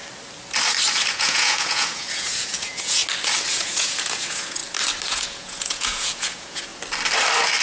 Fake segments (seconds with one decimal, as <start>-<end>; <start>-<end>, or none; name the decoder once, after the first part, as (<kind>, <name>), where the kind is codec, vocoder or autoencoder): 1.0-3.0 (vocoder, Vocos); 3.5-4.6; 5.1-6.7